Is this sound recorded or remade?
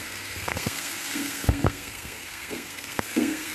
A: remade